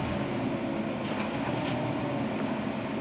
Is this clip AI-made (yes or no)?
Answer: no